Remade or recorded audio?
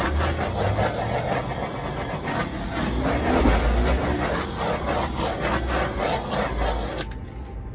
recorded